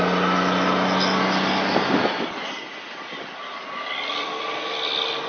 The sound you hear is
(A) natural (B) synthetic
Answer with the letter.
A